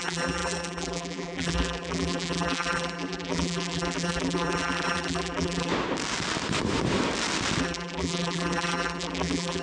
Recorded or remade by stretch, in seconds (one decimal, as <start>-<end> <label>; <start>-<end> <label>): 0.0-5.7 remade; 5.7-7.6 recorded; 7.6-9.6 remade